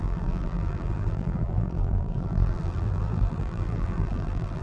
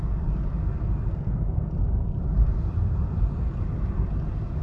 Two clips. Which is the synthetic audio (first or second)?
first